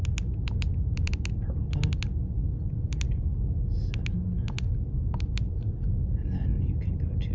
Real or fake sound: real